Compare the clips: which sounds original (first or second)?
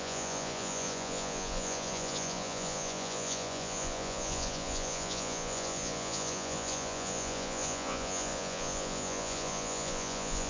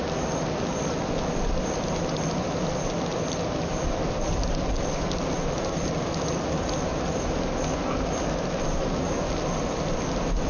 second